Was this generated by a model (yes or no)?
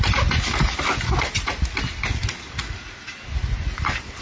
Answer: no